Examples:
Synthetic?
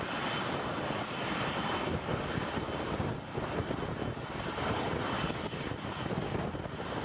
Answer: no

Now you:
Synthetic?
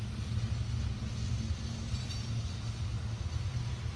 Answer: no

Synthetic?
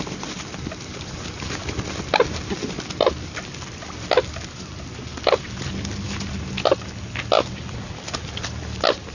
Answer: no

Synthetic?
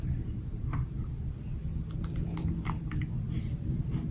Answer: no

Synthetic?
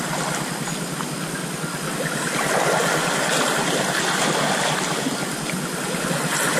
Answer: no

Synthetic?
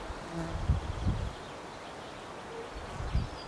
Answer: no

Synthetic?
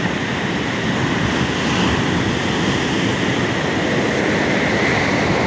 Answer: no